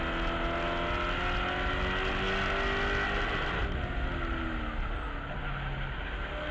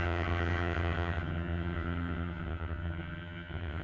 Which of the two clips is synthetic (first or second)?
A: second